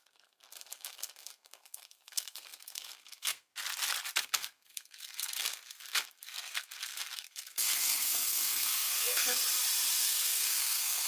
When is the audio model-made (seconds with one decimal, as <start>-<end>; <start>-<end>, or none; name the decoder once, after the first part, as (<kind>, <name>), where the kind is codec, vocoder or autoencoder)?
0.0-3.5 (codec, SNAC); 4.2-9.4; 10.0-11.1